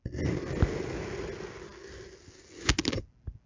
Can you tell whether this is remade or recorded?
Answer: recorded